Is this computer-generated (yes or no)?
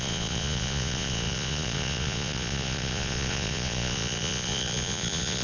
yes